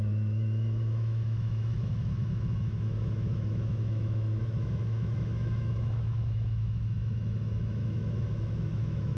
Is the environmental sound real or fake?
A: fake